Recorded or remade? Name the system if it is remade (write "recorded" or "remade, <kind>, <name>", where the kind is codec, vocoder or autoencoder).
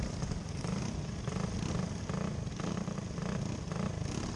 recorded